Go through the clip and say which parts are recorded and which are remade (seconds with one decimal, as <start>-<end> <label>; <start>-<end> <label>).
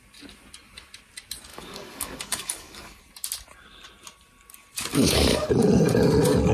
0.0-1.5 recorded; 1.5-3.0 remade; 3.0-4.9 recorded; 4.9-5.5 remade; 5.5-6.5 recorded